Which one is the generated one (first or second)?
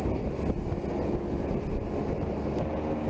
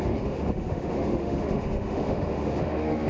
second